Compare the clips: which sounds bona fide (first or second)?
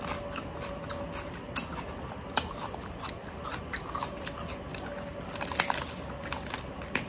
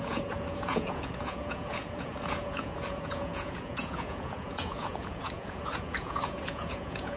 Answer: first